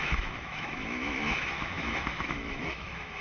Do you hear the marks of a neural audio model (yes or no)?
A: yes